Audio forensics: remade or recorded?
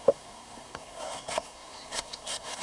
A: remade